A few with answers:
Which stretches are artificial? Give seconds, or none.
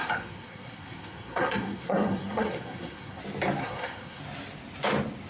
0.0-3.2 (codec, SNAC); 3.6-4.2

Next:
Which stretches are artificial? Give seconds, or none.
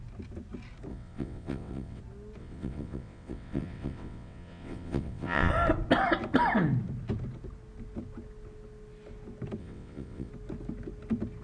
0.9-2.0 (vocoder, WaveNeXt); 2.4-5.5; 9.6-10.3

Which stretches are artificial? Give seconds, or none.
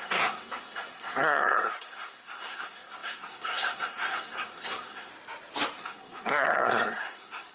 0.0-5.1 (codec, SNAC); 5.8-7.5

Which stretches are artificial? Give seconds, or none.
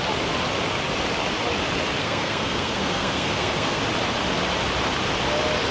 2.0-3.8 (codec, SNAC)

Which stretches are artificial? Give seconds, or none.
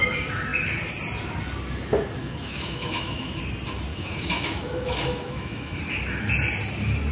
2.2-3.4 (autoencoder, DAC-VAE); 3.9-5.8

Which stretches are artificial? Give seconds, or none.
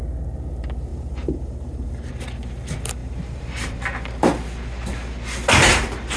0.9-2.1 (vocoder, BigVGAN v2); 3.0-3.8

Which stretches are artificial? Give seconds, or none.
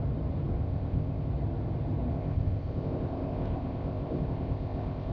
0.6-1.3 (codec, ZipCodec); 2.1-5.1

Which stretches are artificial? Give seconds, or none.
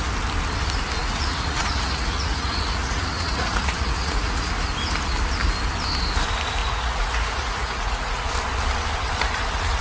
1.0-4.5 (vocoder, Vocos); 6.6-8.3